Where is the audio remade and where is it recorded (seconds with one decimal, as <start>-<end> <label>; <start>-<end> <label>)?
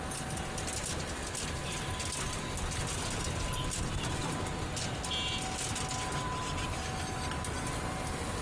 0.0-8.4 recorded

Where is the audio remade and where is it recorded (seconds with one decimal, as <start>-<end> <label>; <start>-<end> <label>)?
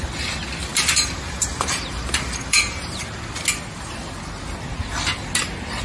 0.0-0.6 recorded; 0.6-3.0 remade; 3.0-5.8 recorded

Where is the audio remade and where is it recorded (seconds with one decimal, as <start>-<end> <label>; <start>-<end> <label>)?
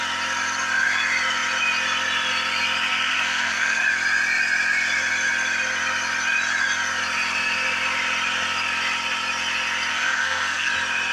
0.0-2.9 recorded; 2.9-3.8 remade; 3.8-9.9 recorded; 9.9-10.7 remade; 10.7-11.1 recorded